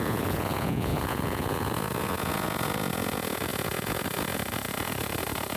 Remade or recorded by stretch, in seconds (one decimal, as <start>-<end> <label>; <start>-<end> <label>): 0.0-5.6 remade